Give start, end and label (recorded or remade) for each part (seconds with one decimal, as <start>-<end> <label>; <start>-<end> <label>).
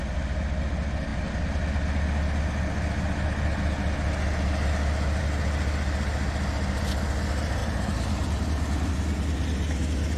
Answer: 0.0-7.6 recorded; 7.6-8.9 remade; 8.9-10.2 recorded